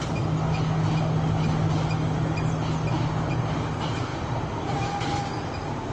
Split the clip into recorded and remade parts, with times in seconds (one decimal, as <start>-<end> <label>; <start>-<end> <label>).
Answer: 0.0-4.1 recorded; 4.1-5.2 remade; 5.2-5.9 recorded